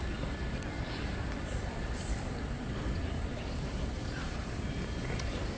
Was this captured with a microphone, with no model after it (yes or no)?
no